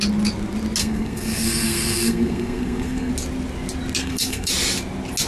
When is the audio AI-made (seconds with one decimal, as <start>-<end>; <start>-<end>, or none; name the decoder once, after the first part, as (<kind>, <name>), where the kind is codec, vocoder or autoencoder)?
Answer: 0.8-3.1 (codec, SNAC); 4.0-4.5